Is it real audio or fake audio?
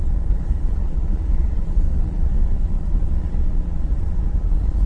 fake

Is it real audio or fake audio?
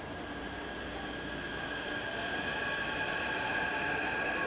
real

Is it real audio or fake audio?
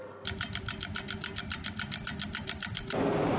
real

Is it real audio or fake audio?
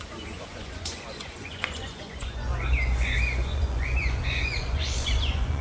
fake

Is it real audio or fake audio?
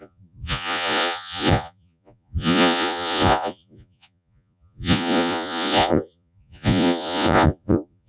fake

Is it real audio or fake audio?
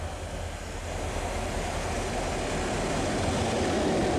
real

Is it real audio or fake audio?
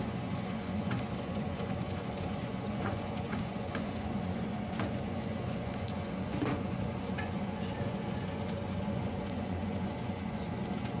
fake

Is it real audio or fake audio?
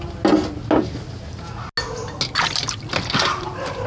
real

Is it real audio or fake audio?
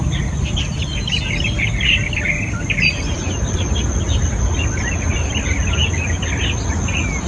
real